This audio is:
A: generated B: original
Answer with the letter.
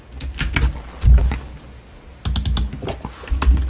B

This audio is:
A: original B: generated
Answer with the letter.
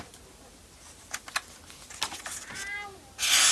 A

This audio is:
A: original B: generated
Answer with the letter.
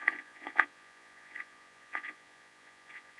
B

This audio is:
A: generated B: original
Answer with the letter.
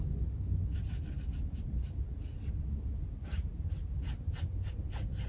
B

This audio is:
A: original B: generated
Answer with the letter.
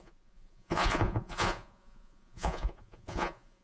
B